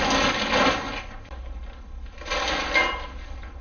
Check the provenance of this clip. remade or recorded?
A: recorded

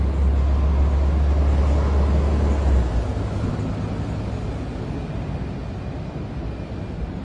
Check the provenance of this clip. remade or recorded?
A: recorded